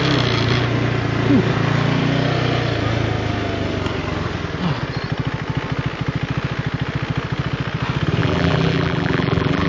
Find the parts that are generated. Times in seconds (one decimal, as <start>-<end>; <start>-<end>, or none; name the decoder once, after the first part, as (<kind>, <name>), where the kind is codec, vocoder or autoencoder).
8.2-9.7 (vocoder, BigVGAN v2)